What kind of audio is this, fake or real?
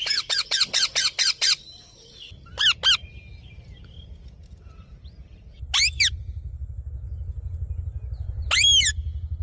real